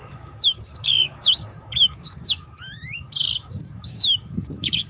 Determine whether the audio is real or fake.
fake